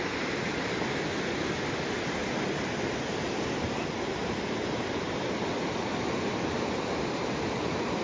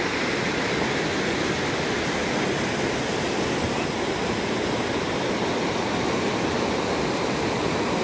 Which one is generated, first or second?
first